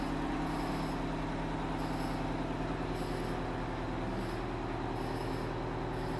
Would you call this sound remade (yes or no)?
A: no